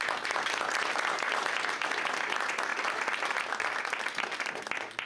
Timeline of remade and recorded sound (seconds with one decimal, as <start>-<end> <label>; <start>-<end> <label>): 0.0-5.1 recorded